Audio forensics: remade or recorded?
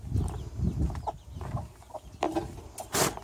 recorded